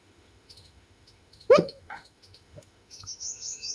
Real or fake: fake